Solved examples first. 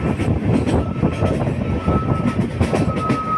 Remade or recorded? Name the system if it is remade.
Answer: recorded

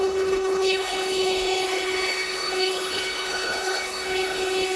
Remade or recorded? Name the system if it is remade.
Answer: remade, codec, HILCodec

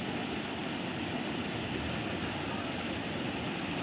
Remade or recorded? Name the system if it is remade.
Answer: recorded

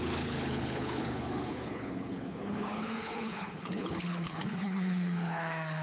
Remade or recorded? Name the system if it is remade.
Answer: remade, codec, HILCodec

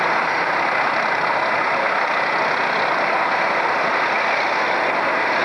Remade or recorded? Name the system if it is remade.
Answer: recorded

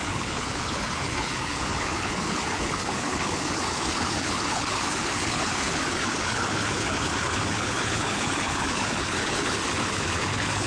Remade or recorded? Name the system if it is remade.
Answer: remade, codec, HILCodec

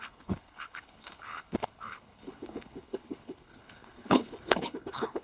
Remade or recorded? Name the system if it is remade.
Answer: remade, codec, HILCodec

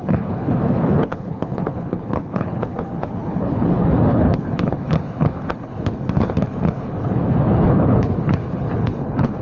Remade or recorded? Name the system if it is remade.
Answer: remade, codec, HILCodec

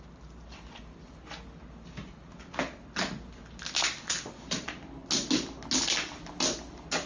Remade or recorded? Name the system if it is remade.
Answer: recorded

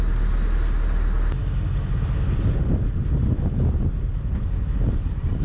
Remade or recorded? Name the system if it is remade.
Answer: recorded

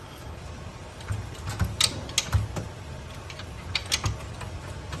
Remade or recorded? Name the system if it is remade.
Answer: recorded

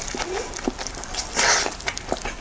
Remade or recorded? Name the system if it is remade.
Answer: recorded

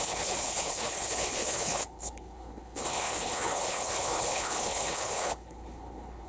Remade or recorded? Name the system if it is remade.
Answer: remade, codec, HILCodec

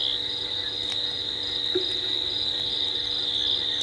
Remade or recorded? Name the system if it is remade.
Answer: recorded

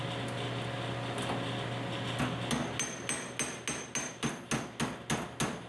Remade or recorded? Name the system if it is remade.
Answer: recorded